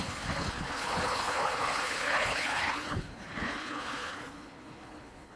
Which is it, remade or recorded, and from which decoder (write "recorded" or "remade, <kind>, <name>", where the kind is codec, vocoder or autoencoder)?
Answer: remade, codec, HILCodec